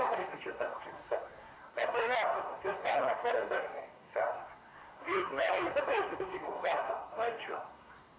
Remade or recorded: remade